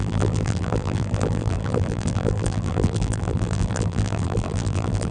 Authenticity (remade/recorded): remade